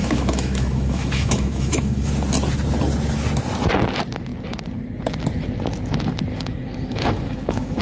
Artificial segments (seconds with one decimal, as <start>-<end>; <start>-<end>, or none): 0.0-2.1; 6.3-7.8